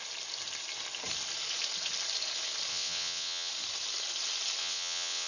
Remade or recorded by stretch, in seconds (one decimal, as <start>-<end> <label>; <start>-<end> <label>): 0.0-2.7 recorded; 2.7-3.5 remade; 3.5-4.6 recorded; 4.6-5.3 remade